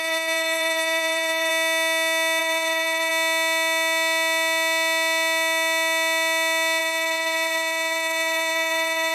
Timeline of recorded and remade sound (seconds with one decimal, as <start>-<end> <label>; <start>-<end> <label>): 0.0-1.5 remade; 1.5-2.4 recorded; 2.4-3.1 remade; 3.1-6.8 recorded; 6.8-9.1 remade